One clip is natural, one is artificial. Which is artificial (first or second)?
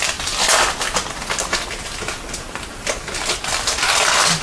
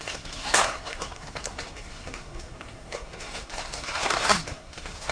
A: second